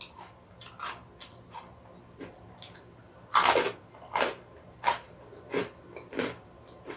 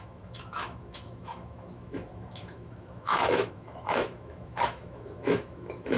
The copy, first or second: second